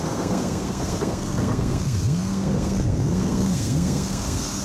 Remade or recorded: remade